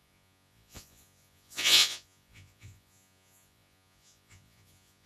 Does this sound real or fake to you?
fake